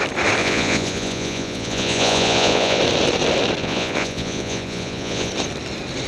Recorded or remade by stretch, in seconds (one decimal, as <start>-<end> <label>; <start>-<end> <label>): 0.0-0.4 recorded; 0.4-2.8 remade; 2.8-3.6 recorded; 3.6-5.3 remade; 5.3-6.1 recorded